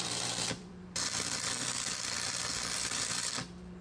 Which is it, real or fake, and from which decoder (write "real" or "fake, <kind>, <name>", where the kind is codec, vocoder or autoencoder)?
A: fake, vocoder, BigVGAN v2